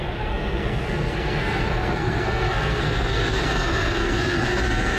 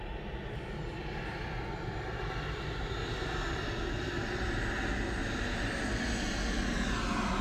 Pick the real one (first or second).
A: second